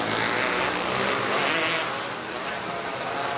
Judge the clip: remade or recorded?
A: recorded